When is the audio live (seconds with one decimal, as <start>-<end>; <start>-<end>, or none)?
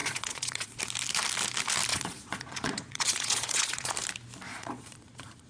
0.8-1.9; 3.9-4.5